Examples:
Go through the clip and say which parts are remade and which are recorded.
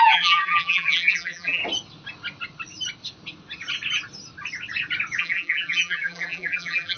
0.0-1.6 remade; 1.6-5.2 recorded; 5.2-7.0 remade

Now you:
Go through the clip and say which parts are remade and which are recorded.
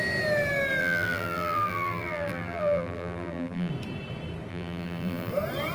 0.0-0.8 recorded; 0.8-3.7 remade; 3.7-4.5 recorded; 4.5-5.3 remade; 5.3-5.7 recorded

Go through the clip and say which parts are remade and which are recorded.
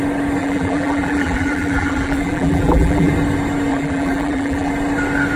0.0-0.4 recorded; 0.4-3.1 remade; 3.1-3.7 recorded; 3.7-4.7 remade; 4.7-5.4 recorded